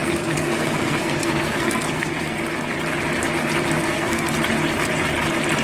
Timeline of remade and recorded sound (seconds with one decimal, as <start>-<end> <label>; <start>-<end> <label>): 0.0-2.4 remade; 2.4-3.8 recorded; 3.8-4.3 remade; 4.3-5.6 recorded